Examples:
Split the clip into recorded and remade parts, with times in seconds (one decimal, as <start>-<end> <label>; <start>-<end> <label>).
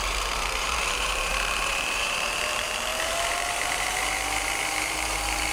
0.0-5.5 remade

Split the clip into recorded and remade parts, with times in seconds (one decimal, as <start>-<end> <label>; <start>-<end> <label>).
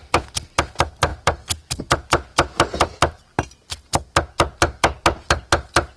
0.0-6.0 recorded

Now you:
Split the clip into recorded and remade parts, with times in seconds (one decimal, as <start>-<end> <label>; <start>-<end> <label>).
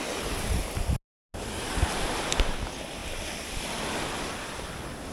0.0-3.0 recorded; 3.0-3.6 remade; 3.6-5.1 recorded